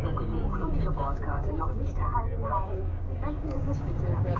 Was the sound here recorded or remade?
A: remade